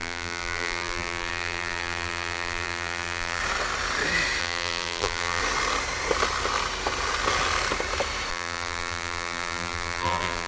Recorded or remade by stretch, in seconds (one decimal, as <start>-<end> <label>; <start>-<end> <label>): 0.0-3.4 remade; 3.4-4.4 recorded; 4.4-5.4 remade; 5.4-8.3 recorded; 8.3-10.5 remade